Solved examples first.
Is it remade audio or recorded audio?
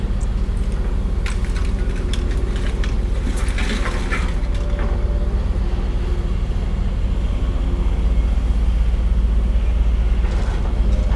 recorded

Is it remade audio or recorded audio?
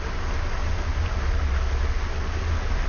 recorded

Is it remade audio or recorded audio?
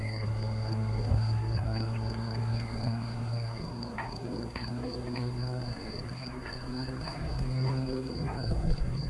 remade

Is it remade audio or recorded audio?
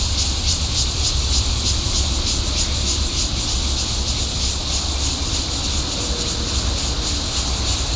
recorded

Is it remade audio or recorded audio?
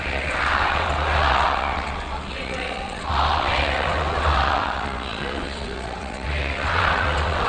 remade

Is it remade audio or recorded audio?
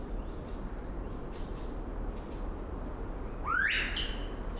recorded